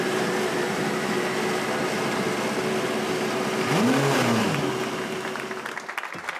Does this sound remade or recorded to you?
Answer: recorded